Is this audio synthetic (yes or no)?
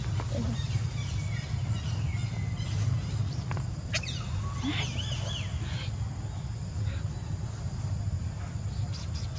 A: no